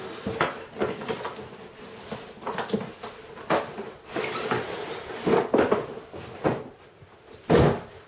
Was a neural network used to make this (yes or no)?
no